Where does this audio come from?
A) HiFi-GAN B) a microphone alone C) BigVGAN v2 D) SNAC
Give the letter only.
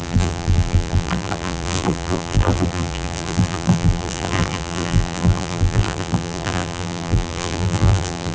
C